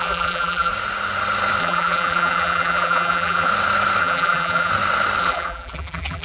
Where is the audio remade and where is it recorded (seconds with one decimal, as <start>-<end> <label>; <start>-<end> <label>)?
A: 0.0-0.7 remade; 0.7-1.6 recorded; 1.6-3.5 remade; 3.5-4.0 recorded; 4.0-4.7 remade; 4.7-5.2 recorded; 5.2-6.2 remade